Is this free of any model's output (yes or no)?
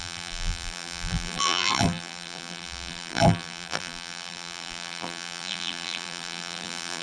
no